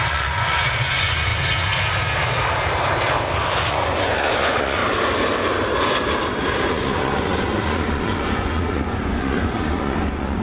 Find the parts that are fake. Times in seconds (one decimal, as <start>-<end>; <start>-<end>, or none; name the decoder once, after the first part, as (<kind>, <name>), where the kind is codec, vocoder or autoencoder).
0.0-1.3 (vocoder, Vocos); 3.7-4.8; 6.7-10.4